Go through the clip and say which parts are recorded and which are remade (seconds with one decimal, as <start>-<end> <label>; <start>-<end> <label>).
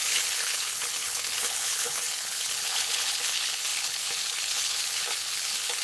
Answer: 0.0-5.8 remade